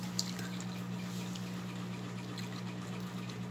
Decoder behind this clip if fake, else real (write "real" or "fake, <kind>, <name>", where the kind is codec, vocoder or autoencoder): real